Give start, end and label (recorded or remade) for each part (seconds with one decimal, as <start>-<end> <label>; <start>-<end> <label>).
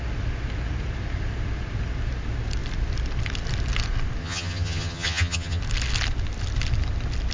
0.0-4.2 recorded; 4.2-5.6 remade; 5.6-7.3 recorded